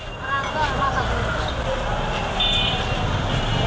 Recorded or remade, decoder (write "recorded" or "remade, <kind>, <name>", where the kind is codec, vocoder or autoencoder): recorded